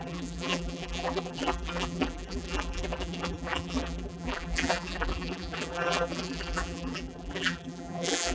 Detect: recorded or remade remade